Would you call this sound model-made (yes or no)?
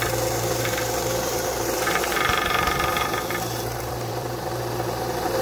yes